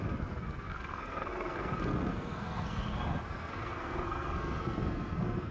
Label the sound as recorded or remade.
remade